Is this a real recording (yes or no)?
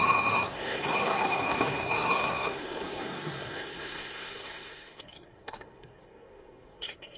no